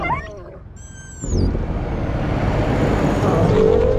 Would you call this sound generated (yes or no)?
no